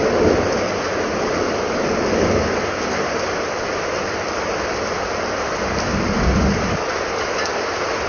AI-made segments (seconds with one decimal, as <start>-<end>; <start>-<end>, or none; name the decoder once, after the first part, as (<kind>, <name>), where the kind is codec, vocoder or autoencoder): none

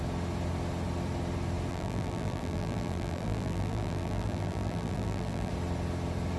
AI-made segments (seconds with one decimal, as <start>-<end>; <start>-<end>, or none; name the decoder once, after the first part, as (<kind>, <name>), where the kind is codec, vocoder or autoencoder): 1.7-5.5 (vocoder, BigVGAN v2)

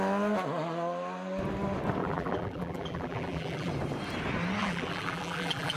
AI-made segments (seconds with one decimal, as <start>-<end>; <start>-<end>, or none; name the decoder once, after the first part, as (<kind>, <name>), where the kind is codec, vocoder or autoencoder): 2.0-3.7 (vocoder, BigVGAN v2); 4.6-5.8

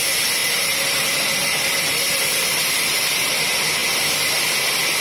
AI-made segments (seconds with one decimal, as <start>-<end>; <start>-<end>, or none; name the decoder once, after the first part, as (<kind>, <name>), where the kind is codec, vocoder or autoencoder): 0.4-3.4 (vocoder, BigVGAN v2)

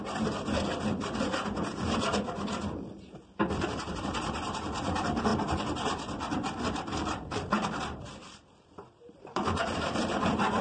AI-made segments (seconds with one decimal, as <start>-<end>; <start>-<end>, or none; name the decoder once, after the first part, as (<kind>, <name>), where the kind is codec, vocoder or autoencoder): 0.0-10.6 (vocoder, BigVGAN v2)

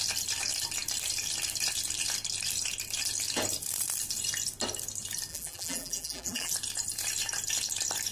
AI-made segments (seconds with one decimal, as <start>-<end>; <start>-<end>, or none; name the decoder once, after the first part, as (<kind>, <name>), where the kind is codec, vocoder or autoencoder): 5.3-6.5 (vocoder, BigVGAN v2)

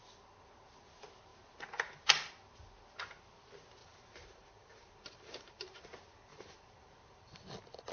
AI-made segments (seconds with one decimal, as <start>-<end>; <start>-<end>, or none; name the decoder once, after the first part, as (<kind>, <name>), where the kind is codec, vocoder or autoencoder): 3.8-5.8 (vocoder, BigVGAN v2); 6.3-7.4